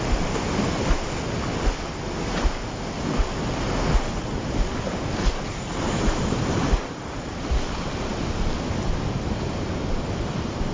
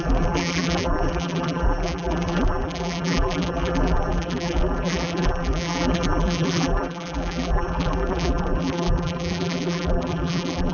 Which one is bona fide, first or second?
first